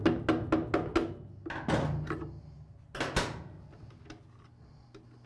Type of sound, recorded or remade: recorded